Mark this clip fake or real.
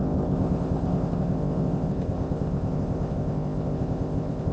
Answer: fake